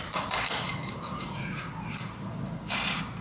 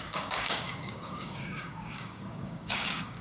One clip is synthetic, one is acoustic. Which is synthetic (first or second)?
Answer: second